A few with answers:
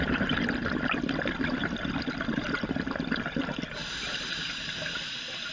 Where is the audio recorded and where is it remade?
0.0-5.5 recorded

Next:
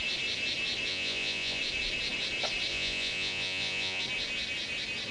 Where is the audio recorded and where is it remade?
0.0-0.9 recorded; 0.9-1.6 remade; 1.6-2.7 recorded; 2.7-4.0 remade; 4.0-5.1 recorded

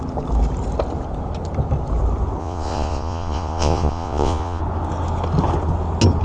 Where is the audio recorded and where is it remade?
0.0-2.4 recorded; 2.4-4.6 remade; 4.6-6.2 recorded

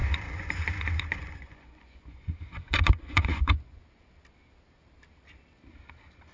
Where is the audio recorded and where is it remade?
0.0-3.8 remade; 3.8-6.3 recorded